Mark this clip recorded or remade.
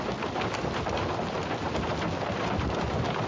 recorded